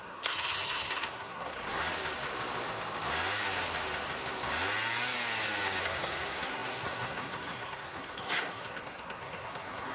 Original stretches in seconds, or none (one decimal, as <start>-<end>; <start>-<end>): 1.8-5.8